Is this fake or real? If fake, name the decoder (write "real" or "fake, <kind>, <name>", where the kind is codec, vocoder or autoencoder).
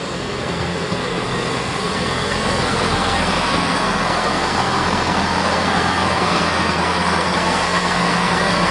fake, codec, SNAC